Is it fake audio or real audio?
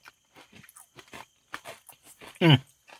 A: real